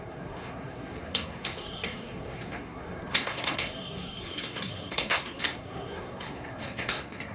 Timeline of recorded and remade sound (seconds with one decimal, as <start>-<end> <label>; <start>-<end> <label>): 0.0-7.3 remade